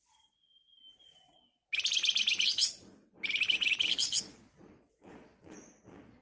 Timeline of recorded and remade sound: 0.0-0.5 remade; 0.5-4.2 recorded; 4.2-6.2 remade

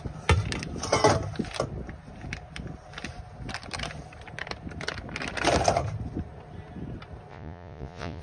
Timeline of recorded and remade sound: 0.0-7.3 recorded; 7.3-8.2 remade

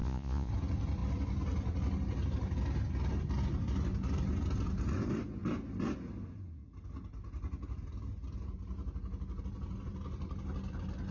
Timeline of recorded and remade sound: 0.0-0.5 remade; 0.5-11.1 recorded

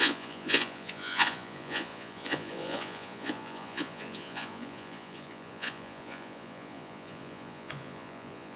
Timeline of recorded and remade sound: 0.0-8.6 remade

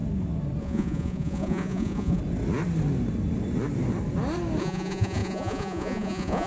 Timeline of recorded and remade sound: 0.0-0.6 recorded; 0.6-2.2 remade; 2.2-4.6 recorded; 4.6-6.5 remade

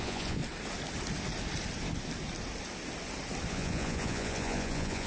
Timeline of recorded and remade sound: 0.0-0.4 remade; 0.4-3.5 recorded; 3.5-5.1 remade